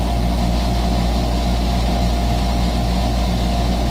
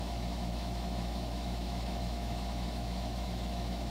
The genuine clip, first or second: first